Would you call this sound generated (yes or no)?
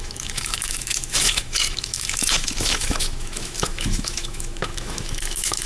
yes